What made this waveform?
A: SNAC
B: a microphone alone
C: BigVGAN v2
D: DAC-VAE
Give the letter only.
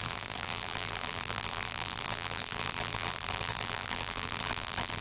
C